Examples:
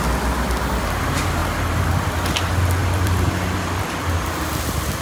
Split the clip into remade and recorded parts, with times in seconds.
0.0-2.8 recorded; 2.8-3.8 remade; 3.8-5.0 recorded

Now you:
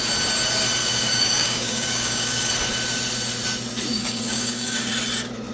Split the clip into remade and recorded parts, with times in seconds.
0.0-0.8 recorded; 0.8-2.5 remade; 2.5-3.9 recorded; 3.9-4.9 remade; 4.9-5.5 recorded

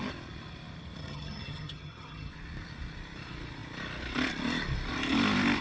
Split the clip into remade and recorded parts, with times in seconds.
0.0-1.0 recorded; 1.0-2.3 remade; 2.3-5.6 recorded

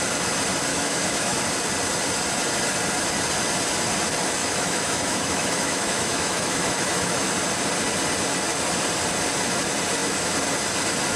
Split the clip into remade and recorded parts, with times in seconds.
0.0-0.7 recorded; 0.7-1.4 remade; 1.4-4.4 recorded; 4.4-7.3 remade; 7.3-11.2 recorded

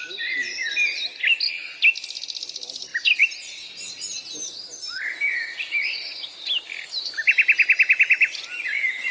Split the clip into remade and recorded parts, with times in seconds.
0.0-9.1 recorded

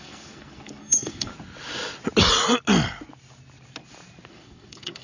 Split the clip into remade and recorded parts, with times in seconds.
0.0-1.3 remade; 1.3-4.3 recorded; 4.3-5.0 remade